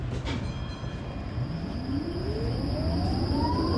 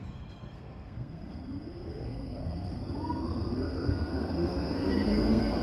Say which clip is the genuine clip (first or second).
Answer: first